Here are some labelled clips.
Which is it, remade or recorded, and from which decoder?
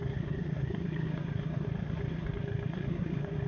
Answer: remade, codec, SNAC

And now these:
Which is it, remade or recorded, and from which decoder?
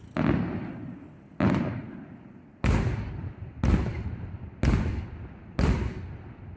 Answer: recorded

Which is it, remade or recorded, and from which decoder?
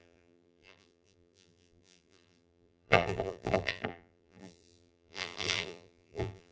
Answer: remade, vocoder, BigVGAN v2